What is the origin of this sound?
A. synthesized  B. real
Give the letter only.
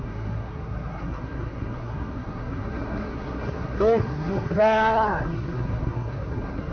A